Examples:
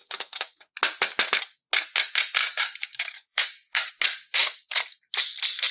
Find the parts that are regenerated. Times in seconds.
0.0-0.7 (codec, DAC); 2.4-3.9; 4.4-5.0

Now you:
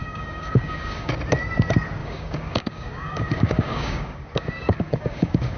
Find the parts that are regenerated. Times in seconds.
0.0-1.1 (codec, DAC); 2.0-5.6

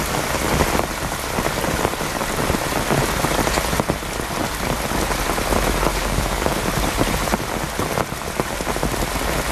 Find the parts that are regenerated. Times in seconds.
5.9-6.7 (codec, DAC)

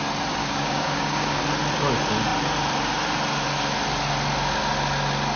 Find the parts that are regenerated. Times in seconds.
0.4-1.4 (codec, DAC)

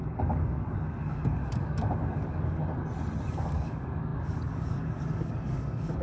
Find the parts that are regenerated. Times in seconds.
0.0-2.6 (codec, DAC); 3.3-6.0

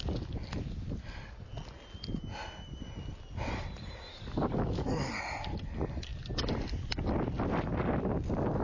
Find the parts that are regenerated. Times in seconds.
4.1-5.1 (codec, DAC)

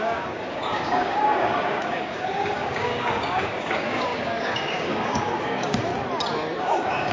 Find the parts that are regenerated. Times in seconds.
0.0-5.9 (codec, DAC); 6.6-7.1